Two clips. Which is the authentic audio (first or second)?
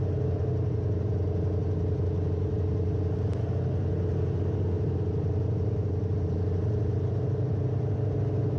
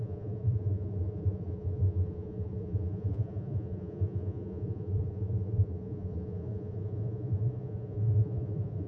first